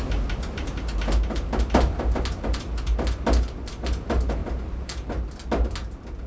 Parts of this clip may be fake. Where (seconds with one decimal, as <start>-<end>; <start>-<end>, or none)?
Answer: none

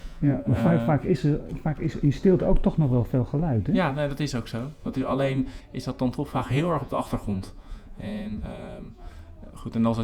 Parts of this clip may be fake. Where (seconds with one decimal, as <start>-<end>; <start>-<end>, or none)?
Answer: 0.0-0.7; 4.8-5.6; 6.3-9.1

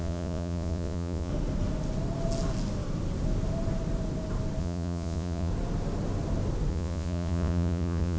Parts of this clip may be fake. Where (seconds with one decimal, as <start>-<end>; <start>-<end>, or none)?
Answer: 0.0-1.3; 4.6-5.5; 6.7-8.2

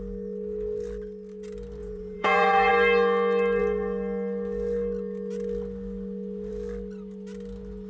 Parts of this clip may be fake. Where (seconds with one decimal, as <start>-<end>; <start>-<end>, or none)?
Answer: 1.8-2.7